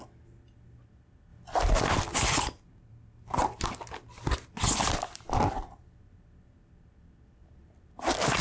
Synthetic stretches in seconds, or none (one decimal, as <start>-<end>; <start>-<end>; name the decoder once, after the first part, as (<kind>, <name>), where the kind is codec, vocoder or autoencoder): none